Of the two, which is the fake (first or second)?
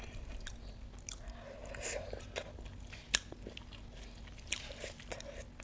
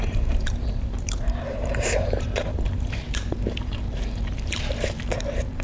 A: second